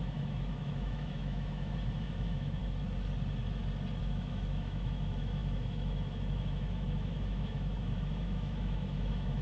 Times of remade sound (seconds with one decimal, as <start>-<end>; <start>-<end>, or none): 0.0-2.6; 4.0-9.4